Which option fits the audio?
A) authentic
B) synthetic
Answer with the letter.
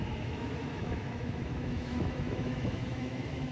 B